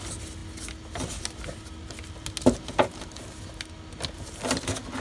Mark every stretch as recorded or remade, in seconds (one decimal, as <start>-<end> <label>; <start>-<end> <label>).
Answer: 0.0-5.0 recorded